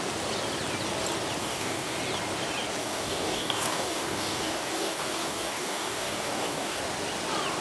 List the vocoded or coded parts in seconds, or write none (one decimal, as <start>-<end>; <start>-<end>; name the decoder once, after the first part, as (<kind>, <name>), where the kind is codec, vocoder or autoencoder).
1.4-2.0 (codec, DAC); 2.8-6.8